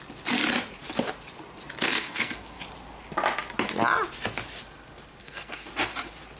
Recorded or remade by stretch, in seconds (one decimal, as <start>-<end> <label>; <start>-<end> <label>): 0.0-1.9 recorded; 1.9-2.6 remade; 2.6-5.2 recorded; 5.2-5.7 remade; 5.7-6.4 recorded